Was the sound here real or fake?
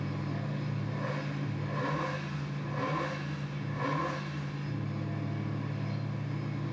real